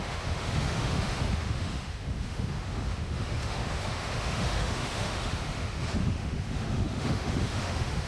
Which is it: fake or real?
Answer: fake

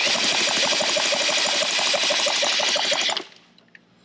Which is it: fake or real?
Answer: real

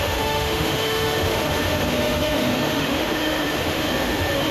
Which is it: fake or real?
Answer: fake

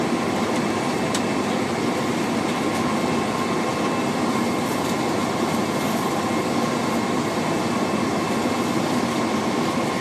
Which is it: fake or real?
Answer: real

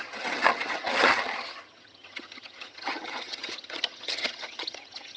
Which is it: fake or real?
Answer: fake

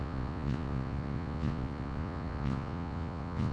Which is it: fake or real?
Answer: fake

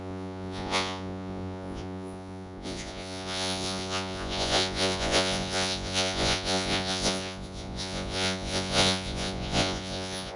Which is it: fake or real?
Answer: fake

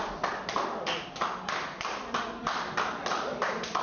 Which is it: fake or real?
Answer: real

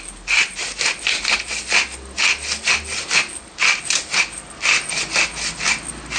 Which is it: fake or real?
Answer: real